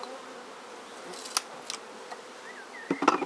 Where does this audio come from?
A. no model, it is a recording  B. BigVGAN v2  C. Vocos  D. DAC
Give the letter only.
A